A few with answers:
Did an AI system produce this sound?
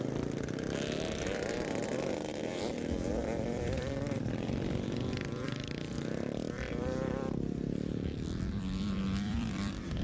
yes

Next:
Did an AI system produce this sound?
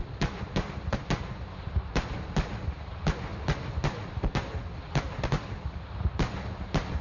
no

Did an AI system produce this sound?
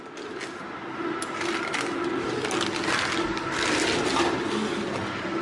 no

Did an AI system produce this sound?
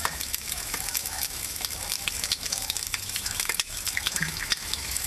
yes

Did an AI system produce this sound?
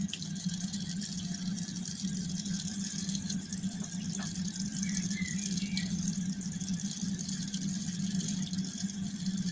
no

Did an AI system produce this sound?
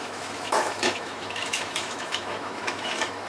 yes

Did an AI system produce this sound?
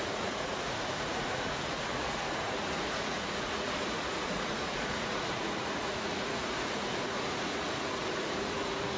yes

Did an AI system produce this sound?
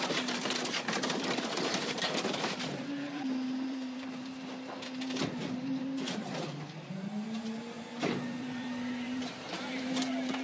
yes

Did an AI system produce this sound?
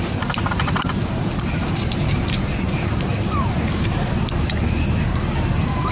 yes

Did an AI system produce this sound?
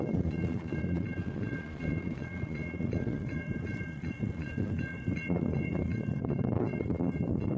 yes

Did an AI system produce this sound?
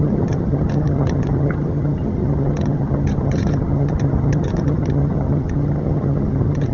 yes